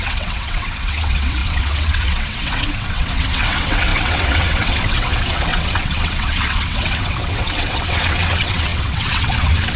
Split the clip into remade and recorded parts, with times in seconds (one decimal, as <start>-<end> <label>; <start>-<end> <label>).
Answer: 0.0-9.8 remade